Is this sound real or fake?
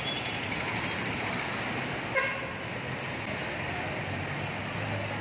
real